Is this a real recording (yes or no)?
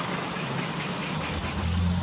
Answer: yes